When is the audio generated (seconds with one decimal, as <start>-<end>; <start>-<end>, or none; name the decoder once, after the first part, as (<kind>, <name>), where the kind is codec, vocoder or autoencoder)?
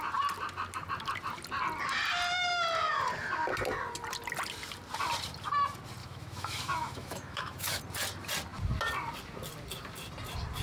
6.0-7.8 (autoencoder, DAC-VAE)